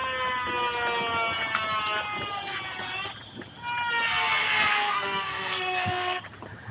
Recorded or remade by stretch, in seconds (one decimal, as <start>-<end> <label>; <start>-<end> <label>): 0.0-4.4 recorded; 4.4-6.2 remade; 6.2-6.7 recorded